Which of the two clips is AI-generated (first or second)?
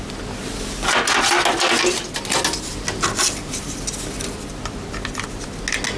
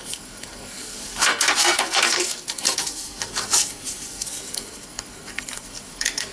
second